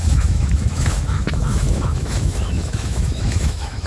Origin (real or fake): fake